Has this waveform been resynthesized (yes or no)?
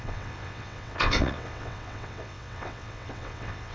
yes